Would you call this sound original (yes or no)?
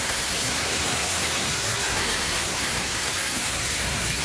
no